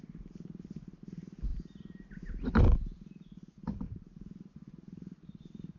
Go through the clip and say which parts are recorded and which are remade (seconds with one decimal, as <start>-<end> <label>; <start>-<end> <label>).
0.0-5.8 remade